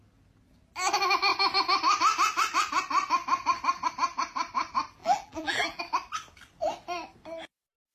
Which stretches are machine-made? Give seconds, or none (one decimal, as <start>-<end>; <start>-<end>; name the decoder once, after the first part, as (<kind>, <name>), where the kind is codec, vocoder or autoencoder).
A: 5.0-5.8 (vocoder, BigVGAN v2)